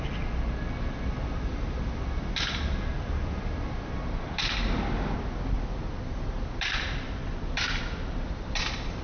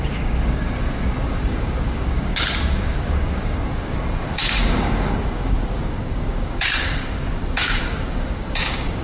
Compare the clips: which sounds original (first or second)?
first